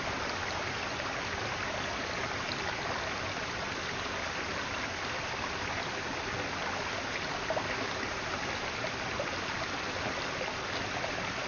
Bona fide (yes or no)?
yes